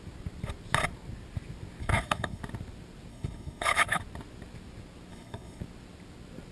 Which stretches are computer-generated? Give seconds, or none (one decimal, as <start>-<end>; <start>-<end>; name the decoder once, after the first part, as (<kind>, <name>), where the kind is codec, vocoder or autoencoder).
1.8-2.4 (codec, HILCodec); 3.1-4.0; 5.1-5.6